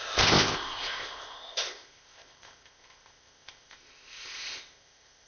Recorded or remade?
remade